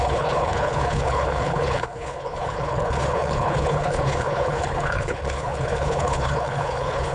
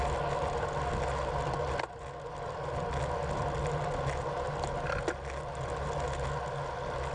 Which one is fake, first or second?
first